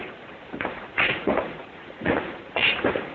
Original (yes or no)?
no